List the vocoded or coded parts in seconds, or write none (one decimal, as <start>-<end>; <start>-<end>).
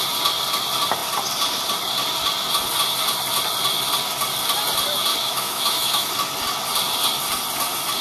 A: 5.1-6.1